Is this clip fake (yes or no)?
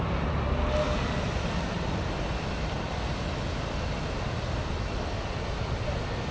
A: no